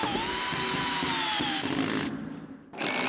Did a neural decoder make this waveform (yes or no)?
no